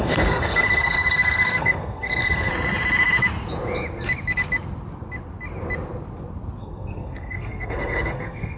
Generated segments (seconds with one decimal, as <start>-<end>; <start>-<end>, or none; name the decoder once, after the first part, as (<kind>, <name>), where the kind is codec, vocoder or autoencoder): 0.0-2.5 (codec, SNAC); 6.6-8.6